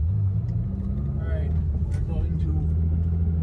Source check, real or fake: real